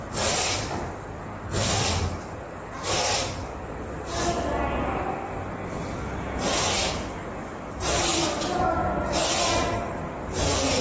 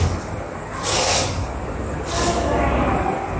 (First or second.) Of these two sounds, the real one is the first